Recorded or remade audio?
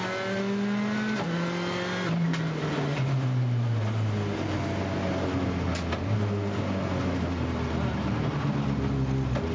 recorded